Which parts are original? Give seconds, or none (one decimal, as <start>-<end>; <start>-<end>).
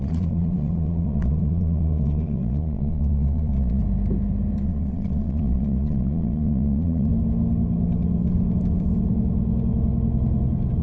3.8-4.6; 7.1-10.8